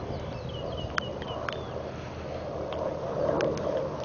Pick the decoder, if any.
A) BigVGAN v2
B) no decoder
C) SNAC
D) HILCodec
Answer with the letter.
B